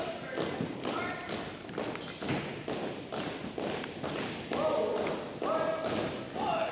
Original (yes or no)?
yes